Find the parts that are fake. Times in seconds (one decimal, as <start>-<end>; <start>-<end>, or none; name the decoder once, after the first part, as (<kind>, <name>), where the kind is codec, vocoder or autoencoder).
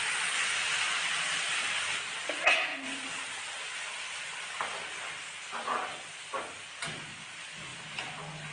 none